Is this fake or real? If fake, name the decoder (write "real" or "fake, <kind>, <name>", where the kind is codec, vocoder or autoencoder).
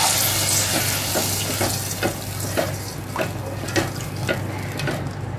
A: real